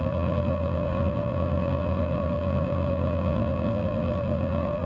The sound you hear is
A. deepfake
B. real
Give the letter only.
A